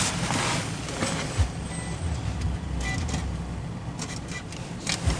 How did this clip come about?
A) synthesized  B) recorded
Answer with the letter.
B